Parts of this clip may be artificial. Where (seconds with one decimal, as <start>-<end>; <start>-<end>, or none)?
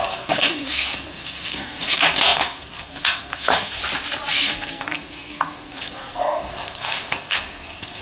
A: 0.0-3.8; 4.3-8.0